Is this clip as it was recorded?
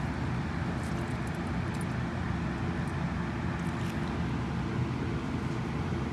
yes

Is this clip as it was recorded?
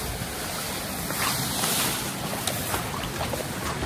yes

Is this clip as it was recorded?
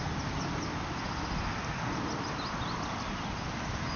yes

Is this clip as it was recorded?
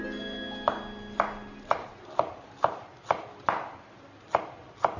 yes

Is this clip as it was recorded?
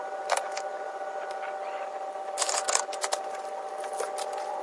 yes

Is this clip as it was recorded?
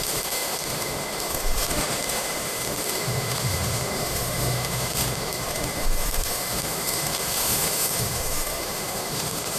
no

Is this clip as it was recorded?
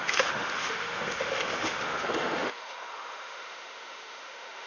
no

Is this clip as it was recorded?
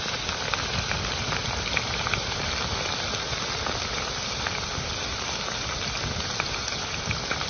yes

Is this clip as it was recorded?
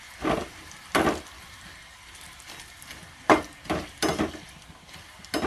yes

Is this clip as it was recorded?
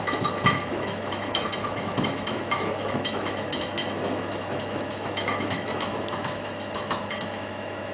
no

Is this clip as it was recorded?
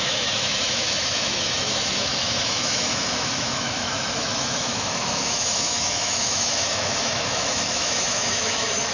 no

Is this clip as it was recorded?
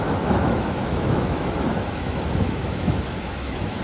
no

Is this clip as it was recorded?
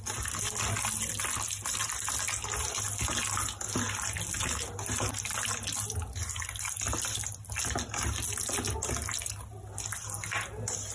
yes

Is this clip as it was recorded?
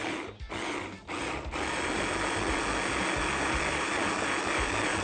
yes